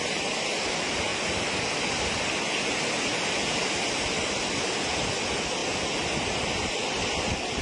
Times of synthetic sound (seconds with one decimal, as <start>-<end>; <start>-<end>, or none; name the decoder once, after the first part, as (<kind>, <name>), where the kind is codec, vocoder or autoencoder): none